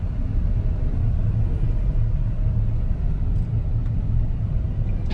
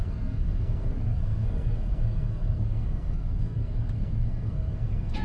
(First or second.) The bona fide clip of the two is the first